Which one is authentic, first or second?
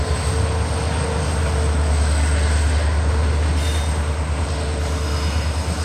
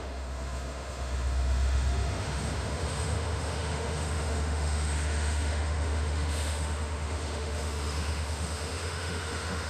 first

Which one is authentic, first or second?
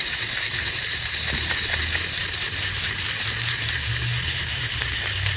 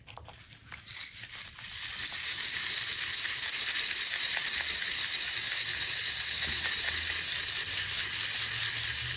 second